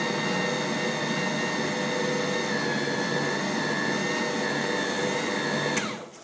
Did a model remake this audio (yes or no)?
no